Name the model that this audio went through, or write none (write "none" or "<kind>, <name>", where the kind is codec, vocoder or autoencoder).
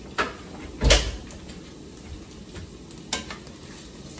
none